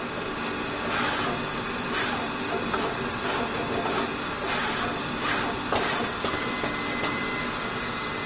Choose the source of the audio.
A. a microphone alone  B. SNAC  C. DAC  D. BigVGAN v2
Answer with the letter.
A